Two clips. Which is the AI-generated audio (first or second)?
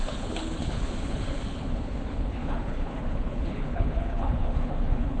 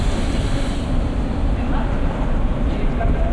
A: first